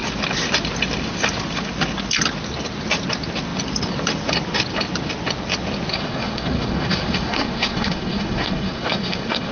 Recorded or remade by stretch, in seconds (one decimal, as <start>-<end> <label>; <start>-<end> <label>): 0.0-5.9 recorded; 5.9-9.5 remade

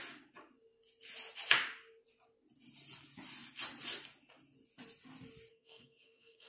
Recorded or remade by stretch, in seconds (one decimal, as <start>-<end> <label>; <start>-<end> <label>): 0.0-5.5 recorded; 5.5-6.5 remade

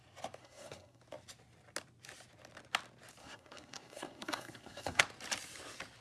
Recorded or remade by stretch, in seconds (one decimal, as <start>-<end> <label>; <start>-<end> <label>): 0.0-0.4 recorded; 0.4-1.0 remade; 1.0-3.2 recorded; 3.2-5.0 remade; 5.0-6.0 recorded